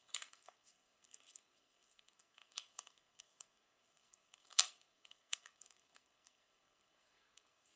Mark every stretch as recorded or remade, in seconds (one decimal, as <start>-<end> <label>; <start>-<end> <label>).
0.0-7.8 remade